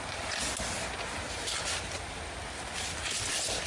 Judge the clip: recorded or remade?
recorded